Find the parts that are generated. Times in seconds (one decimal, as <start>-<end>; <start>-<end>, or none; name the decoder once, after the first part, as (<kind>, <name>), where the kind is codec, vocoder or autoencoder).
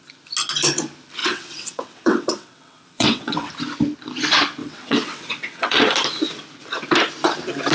1.2-3.5 (vocoder, WaveNeXt); 4.6-5.8